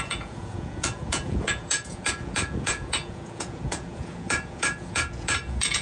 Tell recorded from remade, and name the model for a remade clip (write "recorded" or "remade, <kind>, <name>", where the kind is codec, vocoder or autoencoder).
remade, vocoder, Vocos